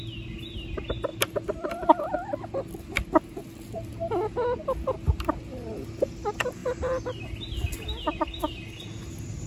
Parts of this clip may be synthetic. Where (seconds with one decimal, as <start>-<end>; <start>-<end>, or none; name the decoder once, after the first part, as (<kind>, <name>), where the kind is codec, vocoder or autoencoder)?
1.1-2.0 (vocoder, BigVGAN v2); 6.6-7.2